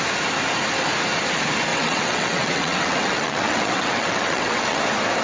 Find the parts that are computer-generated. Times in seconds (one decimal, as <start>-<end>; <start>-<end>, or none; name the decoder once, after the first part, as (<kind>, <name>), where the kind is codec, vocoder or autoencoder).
1.7-4.8 (vocoder, WaveNeXt)